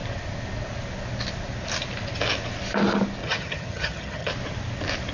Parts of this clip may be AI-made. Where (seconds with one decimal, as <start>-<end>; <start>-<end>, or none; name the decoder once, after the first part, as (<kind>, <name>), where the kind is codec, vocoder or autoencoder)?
3.2-4.3 (vocoder, HiFi-GAN)